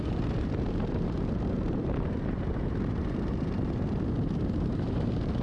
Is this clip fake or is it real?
fake